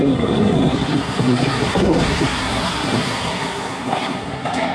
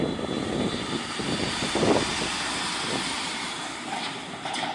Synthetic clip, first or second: first